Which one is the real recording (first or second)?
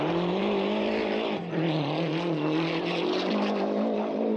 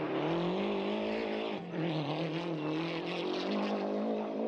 second